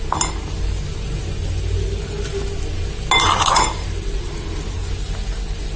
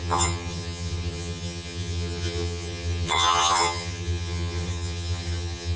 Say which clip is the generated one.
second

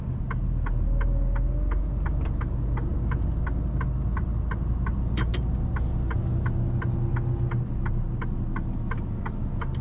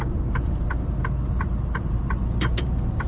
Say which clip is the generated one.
second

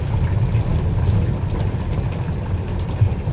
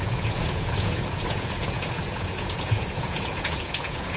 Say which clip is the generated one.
second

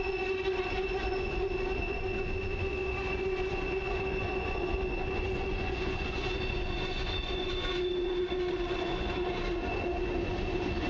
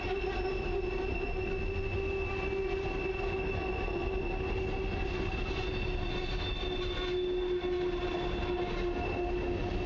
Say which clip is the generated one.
first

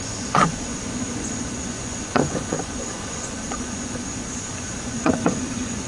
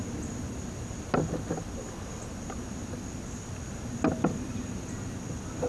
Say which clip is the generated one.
first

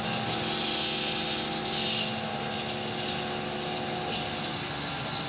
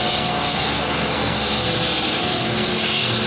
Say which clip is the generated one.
second